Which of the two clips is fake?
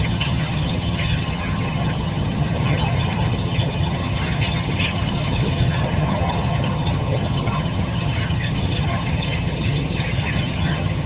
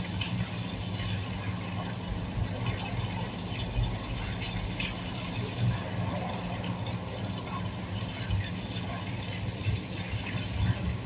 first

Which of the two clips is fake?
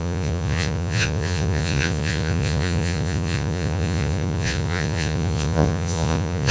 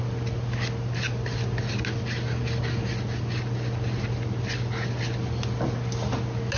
first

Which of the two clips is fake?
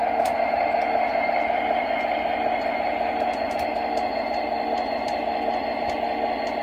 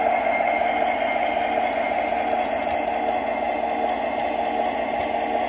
first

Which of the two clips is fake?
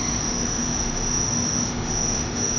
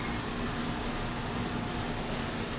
first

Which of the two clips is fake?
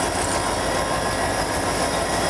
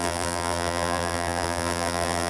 second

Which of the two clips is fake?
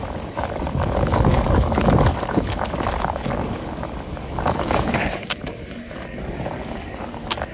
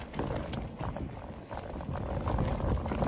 first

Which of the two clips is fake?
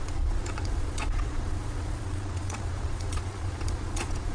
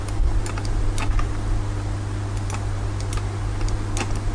first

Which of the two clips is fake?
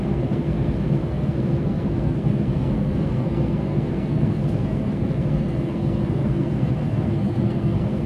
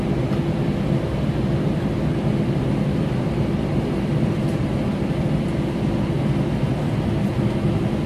first